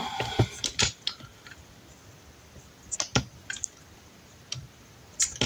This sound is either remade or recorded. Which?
recorded